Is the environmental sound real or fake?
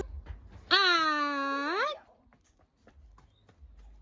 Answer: real